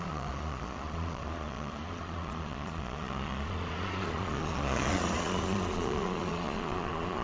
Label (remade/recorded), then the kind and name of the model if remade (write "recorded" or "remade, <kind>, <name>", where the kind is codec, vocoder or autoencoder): remade, vocoder, Vocos